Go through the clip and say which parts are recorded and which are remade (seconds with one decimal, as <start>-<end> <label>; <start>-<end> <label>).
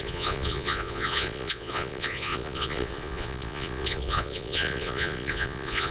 0.0-5.9 remade